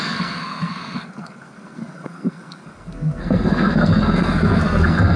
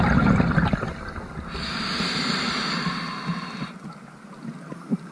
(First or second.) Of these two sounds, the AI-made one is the first